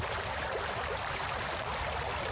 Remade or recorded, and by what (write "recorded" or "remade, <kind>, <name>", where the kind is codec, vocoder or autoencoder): recorded